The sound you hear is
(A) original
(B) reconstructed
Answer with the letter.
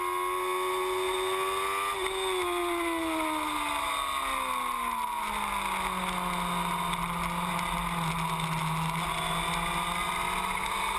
A